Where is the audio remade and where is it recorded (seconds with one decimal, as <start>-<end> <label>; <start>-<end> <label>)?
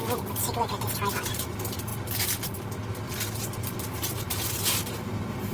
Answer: 0.0-1.2 recorded; 1.2-1.9 remade; 1.9-3.1 recorded; 3.1-5.5 remade